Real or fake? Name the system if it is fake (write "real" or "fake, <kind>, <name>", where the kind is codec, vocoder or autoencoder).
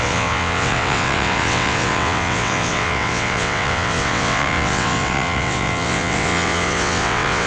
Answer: fake, vocoder, WaveNeXt